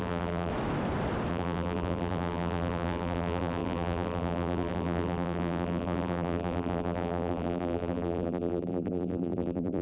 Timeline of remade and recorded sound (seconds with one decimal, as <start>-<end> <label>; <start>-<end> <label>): 0.0-0.5 remade; 0.5-1.3 recorded; 1.3-9.8 remade